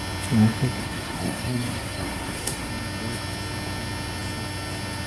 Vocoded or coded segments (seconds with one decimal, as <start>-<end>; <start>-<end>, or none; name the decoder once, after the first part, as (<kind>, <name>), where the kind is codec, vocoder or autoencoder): 0.8-2.7 (codec, SNAC)